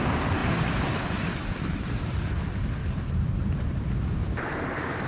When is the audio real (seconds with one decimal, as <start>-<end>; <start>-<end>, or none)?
0.0-0.4; 2.2-2.8

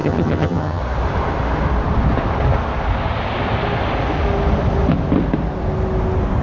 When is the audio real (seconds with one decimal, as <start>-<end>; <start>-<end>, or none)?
0.8-6.4

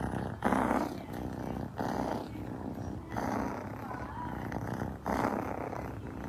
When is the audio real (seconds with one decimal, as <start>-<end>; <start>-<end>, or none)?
0.0-6.3

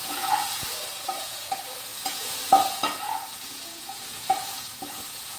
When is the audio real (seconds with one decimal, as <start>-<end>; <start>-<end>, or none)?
none

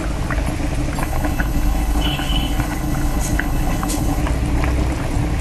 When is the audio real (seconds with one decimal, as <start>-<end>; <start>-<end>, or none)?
0.0-1.0; 4.2-5.4